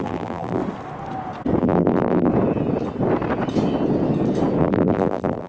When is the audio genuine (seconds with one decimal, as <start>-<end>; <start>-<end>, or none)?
0.6-1.6; 2.3-4.6